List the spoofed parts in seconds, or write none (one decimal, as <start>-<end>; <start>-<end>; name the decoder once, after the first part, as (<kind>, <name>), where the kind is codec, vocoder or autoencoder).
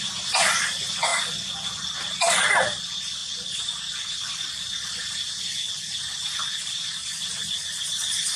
none